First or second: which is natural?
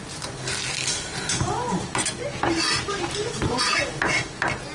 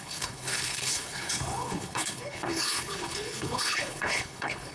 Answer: first